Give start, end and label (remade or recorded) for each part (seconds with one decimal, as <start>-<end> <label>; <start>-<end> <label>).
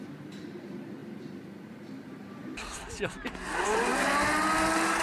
0.0-3.9 remade; 3.9-5.0 recorded